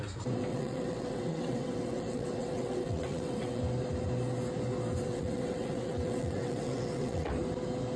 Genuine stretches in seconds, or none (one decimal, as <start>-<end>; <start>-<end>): 0.0-0.5; 3.6-5.1; 7.3-8.0